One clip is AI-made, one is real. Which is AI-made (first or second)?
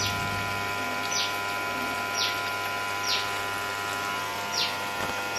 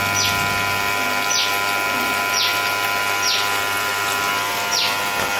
first